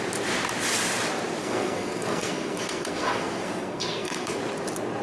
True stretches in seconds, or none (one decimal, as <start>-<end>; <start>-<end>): 0.0-1.4; 4.4-5.0